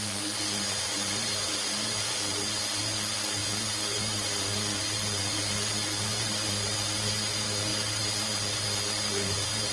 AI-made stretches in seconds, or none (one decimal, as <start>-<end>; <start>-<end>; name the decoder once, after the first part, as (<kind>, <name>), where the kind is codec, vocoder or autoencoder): 0.0-9.7 (vocoder, Vocos)